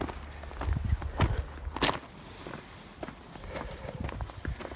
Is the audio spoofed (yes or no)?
no